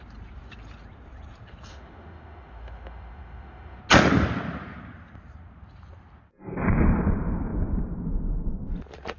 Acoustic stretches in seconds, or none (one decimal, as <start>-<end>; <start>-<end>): 0.0-1.7; 3.8-9.2